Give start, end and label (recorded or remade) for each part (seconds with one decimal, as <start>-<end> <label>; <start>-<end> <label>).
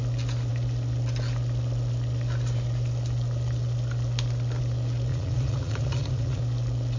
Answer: 0.0-5.1 recorded; 5.1-6.4 remade; 6.4-7.0 recorded